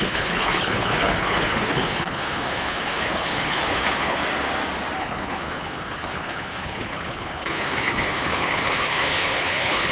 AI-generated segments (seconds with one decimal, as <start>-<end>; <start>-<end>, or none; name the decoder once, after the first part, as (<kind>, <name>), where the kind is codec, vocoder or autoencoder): 0.0-4.2 (codec, HILCodec); 5.0-9.9